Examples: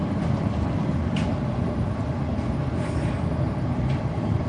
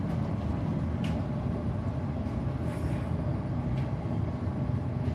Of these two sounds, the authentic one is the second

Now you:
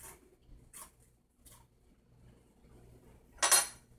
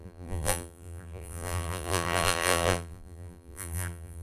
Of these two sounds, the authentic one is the first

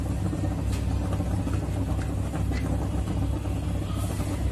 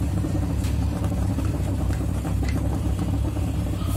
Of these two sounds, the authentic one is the first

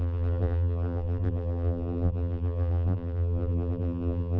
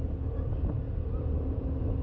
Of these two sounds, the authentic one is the second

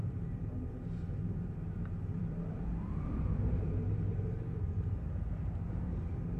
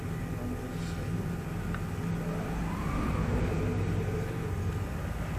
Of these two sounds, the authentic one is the second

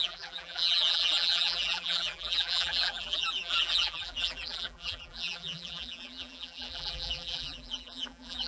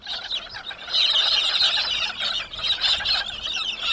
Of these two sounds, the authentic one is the second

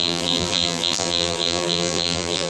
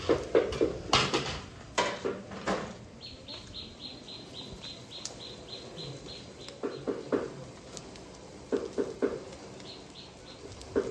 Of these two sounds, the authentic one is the second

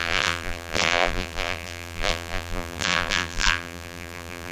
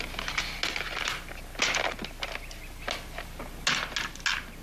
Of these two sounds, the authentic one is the second